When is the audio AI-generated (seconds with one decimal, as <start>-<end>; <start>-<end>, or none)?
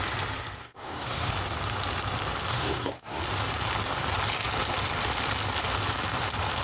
0.6-1.3; 2.5-3.2